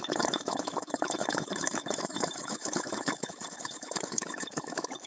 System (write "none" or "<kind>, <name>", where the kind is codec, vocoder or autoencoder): autoencoder, DAC-VAE